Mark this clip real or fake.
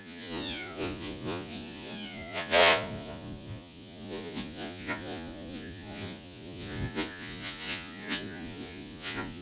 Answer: fake